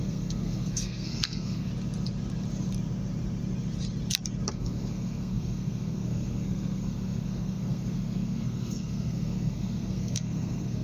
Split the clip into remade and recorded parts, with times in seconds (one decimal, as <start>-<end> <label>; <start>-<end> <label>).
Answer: 0.0-1.7 remade; 1.7-4.5 recorded; 4.5-10.8 remade